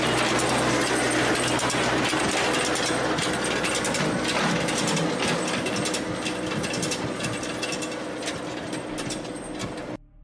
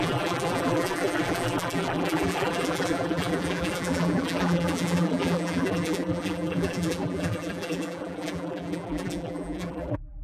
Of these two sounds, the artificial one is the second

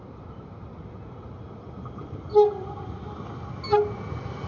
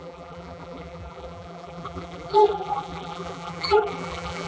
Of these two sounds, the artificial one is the second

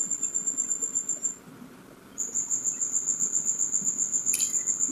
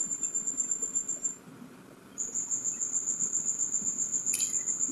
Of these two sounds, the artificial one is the second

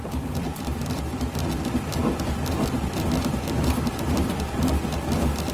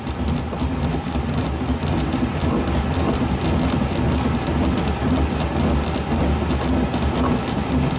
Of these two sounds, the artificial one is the first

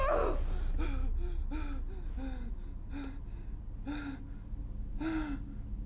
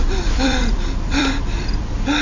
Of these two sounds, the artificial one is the second